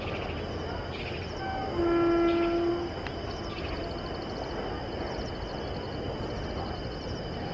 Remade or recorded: recorded